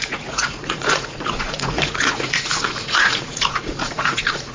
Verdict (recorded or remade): remade